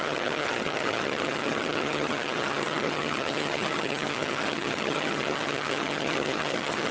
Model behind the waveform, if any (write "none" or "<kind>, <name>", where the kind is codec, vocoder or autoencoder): vocoder, HiFi-GAN